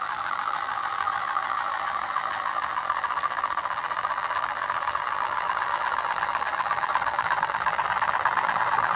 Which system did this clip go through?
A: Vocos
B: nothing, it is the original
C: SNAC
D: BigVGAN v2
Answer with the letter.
D